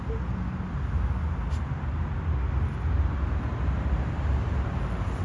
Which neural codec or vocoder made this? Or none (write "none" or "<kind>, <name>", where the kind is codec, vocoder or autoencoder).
none